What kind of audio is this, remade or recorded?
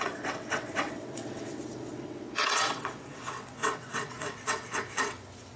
remade